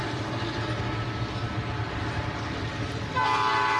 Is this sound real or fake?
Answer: real